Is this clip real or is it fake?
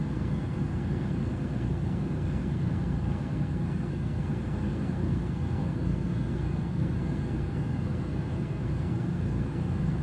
fake